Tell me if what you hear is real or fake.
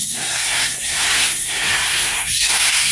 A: fake